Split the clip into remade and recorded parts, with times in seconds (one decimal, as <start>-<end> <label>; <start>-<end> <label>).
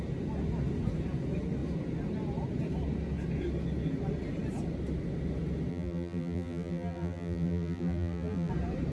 0.0-5.7 recorded; 5.7-8.5 remade; 8.5-8.9 recorded